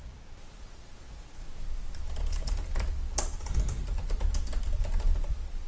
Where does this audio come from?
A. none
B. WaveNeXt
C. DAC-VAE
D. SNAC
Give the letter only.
A